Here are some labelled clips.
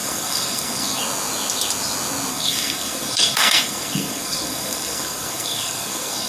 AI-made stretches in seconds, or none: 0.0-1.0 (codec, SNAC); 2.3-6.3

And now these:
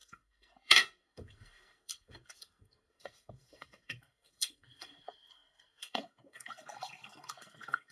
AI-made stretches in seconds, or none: 0.0-7.9 (codec, SNAC)

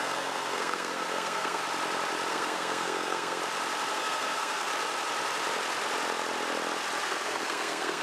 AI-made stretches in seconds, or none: 0.0-1.6 (codec, SNAC); 2.3-3.4; 3.9-4.7; 7.0-8.0

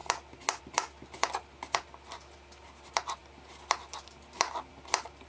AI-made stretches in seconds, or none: none